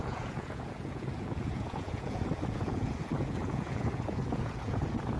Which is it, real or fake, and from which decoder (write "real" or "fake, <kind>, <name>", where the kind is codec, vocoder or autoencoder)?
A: fake, vocoder, Vocos